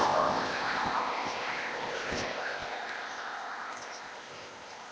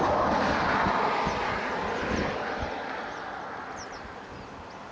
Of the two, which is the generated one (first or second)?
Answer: first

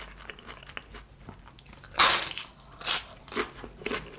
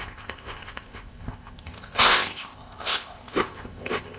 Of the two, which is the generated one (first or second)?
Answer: second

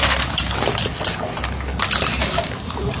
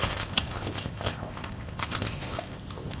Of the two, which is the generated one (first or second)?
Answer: second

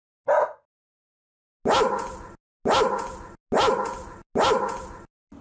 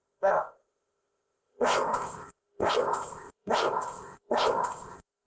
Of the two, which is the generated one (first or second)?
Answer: second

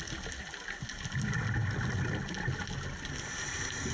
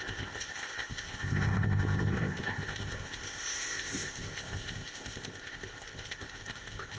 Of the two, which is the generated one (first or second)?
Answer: second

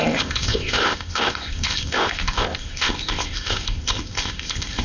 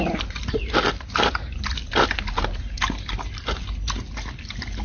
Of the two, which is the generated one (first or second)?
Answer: first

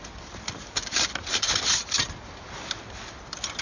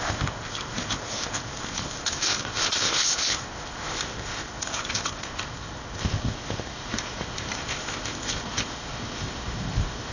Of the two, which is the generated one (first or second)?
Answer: second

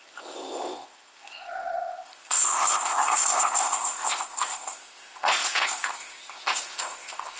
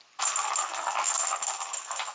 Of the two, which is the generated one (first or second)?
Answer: first